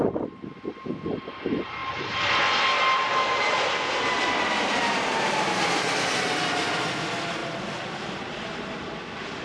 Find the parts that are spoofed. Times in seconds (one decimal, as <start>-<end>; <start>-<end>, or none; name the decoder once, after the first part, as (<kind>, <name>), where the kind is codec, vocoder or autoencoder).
1.8-5.7 (vocoder, BigVGAN v2)